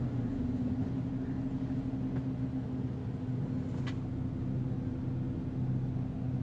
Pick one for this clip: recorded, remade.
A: recorded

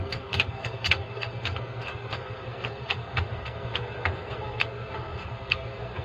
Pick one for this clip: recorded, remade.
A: remade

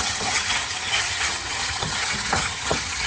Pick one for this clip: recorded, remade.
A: remade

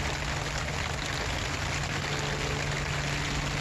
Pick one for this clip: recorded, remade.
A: recorded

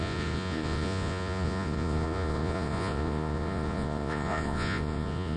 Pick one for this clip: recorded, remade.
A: remade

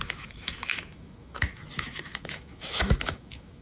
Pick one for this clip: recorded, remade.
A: remade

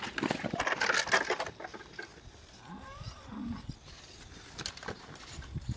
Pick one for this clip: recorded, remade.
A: recorded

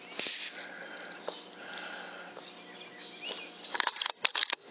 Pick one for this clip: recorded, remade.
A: recorded